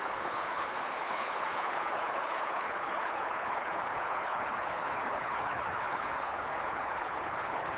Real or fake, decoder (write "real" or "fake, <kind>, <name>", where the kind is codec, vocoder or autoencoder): fake, codec, HILCodec